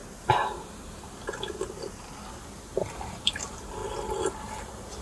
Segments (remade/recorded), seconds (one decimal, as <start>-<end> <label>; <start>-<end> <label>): 0.0-3.0 recorded; 3.0-3.8 remade; 3.8-4.6 recorded; 4.6-5.0 remade